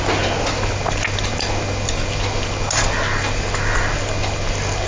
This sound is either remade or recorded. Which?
recorded